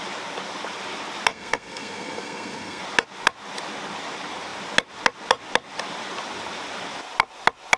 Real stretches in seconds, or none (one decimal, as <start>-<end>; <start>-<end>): 0.0-1.3; 2.8-7.8